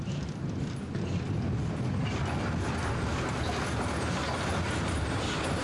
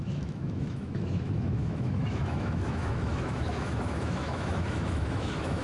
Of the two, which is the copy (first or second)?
second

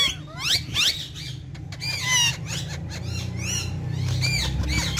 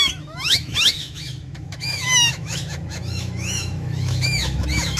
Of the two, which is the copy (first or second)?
second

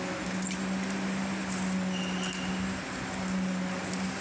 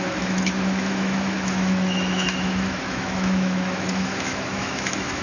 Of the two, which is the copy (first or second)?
second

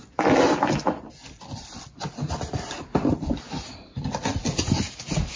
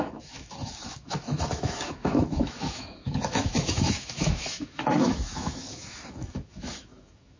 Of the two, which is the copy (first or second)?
second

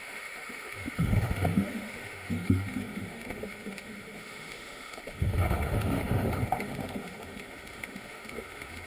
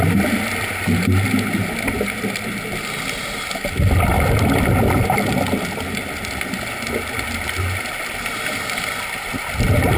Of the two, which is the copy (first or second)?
first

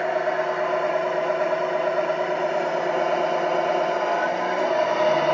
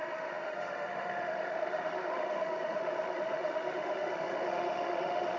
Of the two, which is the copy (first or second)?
second